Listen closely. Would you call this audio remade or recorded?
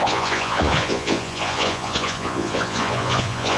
remade